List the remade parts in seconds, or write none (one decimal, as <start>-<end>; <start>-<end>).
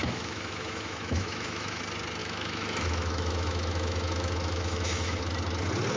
0.0-1.8; 2.2-5.2